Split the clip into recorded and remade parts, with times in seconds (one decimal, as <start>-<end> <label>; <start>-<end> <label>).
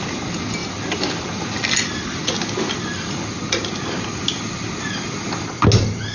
0.0-6.1 recorded